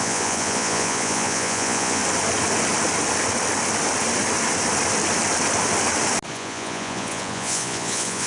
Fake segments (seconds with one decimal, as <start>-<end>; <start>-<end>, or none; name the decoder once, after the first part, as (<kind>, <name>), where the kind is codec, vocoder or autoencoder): 0.0-2.0 (vocoder, Vocos); 6.3-8.3